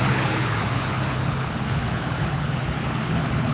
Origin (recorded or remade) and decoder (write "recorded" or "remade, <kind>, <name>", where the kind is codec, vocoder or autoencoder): remade, codec, HILCodec